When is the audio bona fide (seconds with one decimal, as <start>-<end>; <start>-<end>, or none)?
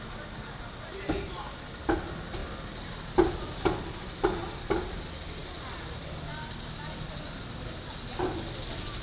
0.0-9.0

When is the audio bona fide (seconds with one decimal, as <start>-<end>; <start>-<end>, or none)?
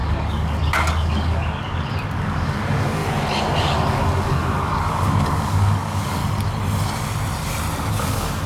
3.0-3.6; 6.2-7.9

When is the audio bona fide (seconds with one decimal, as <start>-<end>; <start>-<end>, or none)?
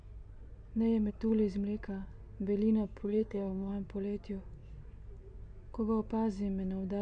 0.0-3.0; 3.7-7.0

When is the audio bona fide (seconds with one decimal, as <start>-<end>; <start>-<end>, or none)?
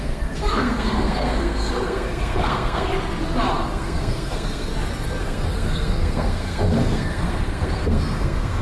2.9-3.5; 4.7-5.2